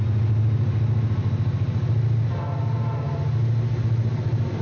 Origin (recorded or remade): recorded